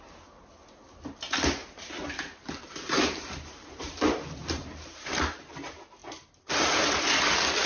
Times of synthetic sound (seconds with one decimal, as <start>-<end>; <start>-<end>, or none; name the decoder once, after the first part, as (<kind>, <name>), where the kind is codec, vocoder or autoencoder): 1.6-5.5 (vocoder, BigVGAN v2); 6.0-7.0